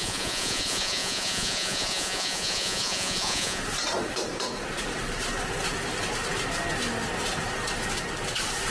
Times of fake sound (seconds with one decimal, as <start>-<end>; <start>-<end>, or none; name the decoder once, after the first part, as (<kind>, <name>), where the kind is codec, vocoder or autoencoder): 0.0-3.6 (vocoder, Vocos)